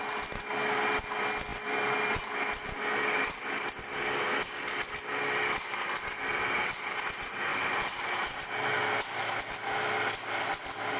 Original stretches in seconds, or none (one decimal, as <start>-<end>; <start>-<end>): 0.0-7.5; 8.5-11.0